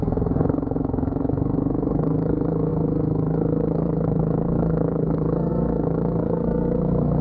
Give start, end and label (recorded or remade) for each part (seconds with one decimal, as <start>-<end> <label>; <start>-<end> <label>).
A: 0.0-7.2 remade